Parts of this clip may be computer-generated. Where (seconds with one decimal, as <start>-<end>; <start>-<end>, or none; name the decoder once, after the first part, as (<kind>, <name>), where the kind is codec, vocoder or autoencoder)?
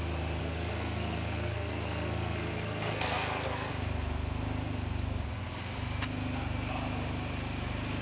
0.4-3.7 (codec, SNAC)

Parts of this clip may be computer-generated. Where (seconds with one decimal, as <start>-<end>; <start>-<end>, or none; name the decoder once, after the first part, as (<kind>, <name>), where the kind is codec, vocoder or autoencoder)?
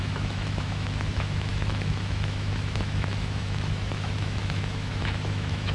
0.0-5.7 (autoencoder, DAC-VAE)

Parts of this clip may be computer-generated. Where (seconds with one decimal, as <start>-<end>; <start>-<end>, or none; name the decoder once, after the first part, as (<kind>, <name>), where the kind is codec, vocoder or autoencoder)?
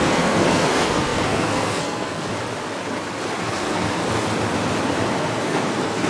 0.0-2.3 (codec, SNAC); 3.4-4.0; 5.2-6.1